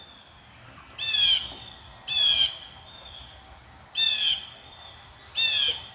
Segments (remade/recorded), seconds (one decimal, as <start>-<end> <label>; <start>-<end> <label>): 0.0-1.9 recorded; 1.9-3.4 remade; 3.4-4.1 recorded; 4.1-5.3 remade; 5.3-5.9 recorded